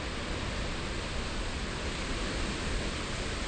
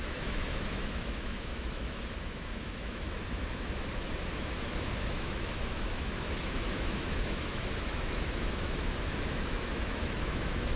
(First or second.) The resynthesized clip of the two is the second